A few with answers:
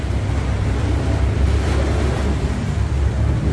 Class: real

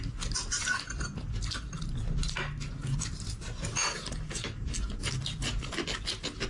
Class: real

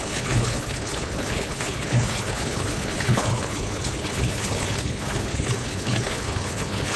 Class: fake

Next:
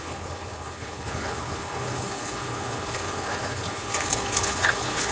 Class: fake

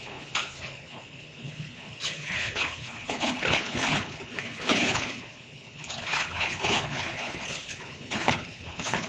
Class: fake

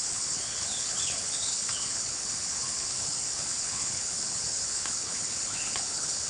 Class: fake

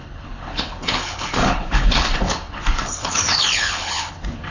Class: fake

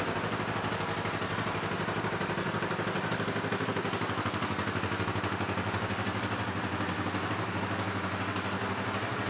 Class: real